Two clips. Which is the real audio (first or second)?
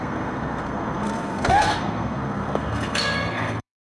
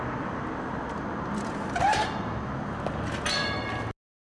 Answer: second